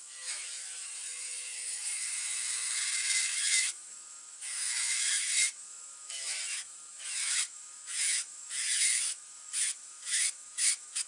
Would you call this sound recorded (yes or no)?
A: no